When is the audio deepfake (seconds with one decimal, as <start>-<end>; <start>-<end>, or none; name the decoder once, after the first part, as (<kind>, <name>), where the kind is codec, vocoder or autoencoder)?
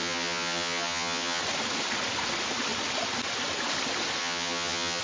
0.0-1.4 (vocoder, HiFi-GAN); 4.2-5.0